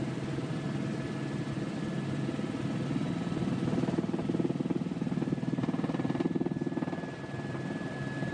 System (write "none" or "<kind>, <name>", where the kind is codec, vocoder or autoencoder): vocoder, BigVGAN v2